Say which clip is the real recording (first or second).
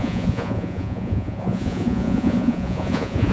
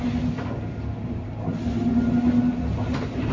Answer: second